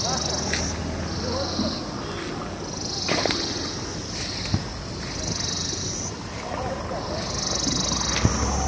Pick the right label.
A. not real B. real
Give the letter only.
B